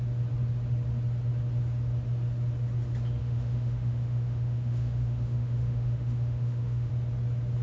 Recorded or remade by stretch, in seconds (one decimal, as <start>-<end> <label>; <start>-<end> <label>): 0.0-3.2 recorded; 3.2-6.9 remade; 6.9-7.6 recorded